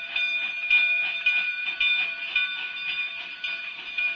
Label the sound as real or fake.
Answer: fake